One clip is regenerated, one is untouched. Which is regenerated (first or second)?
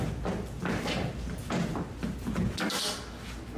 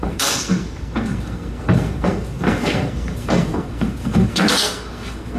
second